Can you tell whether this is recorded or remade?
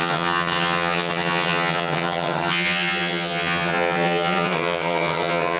remade